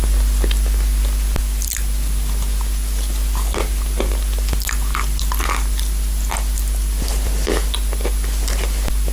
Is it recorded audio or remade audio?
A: recorded